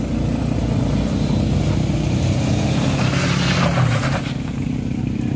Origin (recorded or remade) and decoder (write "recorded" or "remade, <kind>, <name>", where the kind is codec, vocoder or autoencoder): recorded